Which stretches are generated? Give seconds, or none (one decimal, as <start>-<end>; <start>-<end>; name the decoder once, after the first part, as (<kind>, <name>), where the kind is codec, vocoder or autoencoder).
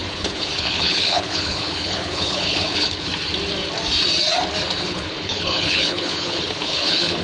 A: 0.0-3.1 (codec, HILCodec); 4.8-7.2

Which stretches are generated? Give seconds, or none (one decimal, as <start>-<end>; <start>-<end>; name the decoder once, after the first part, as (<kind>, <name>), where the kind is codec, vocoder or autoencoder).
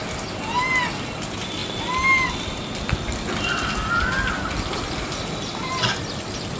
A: none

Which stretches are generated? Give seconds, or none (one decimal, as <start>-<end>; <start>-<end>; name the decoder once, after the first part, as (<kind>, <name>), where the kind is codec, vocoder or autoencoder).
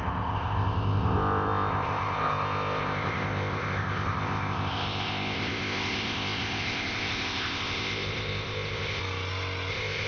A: 0.0-9.0 (codec, ZipCodec); 9.7-10.1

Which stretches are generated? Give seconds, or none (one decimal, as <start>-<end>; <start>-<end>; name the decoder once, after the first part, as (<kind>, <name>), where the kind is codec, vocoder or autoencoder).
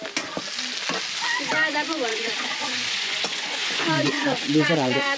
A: 2.1-5.2 (vocoder, Vocos)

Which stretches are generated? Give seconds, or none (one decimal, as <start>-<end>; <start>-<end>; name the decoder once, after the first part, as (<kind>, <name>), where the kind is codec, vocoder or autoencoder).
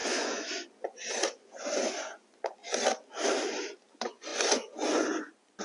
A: 0.0-2.6 (vocoder, Vocos); 3.9-5.6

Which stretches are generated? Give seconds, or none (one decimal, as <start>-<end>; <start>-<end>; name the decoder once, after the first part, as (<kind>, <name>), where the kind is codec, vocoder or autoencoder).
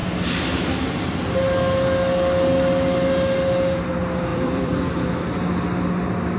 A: 4.3-4.8 (vocoder, BigVGAN v2)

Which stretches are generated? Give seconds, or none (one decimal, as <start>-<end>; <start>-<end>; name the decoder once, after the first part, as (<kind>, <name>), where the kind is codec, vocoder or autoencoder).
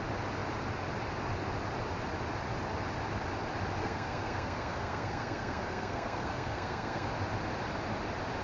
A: 3.8-7.1 (codec, SNAC)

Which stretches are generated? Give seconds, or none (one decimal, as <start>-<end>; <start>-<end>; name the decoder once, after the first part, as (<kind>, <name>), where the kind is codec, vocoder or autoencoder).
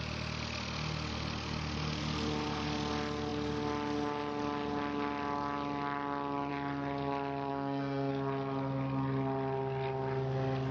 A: 7.5-8.1 (codec, SNAC)